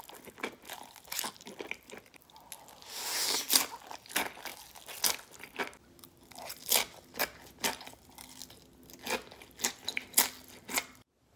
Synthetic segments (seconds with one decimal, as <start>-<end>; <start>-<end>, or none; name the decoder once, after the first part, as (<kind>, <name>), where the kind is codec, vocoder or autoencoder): none